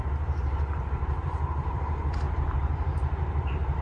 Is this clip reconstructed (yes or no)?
yes